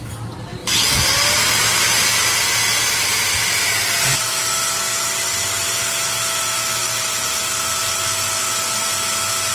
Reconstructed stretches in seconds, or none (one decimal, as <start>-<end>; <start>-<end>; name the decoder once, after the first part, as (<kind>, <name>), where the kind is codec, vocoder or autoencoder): none